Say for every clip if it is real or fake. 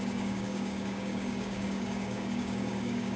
fake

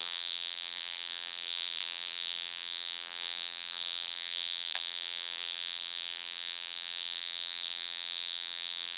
fake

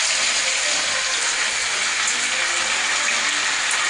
real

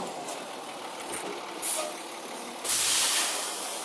real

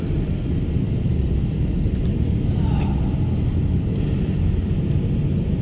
real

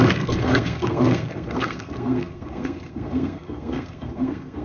fake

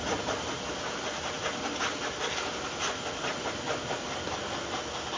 real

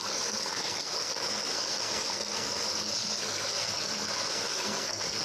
fake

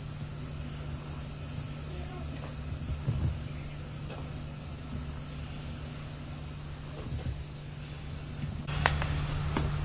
real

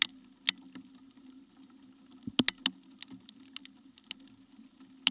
real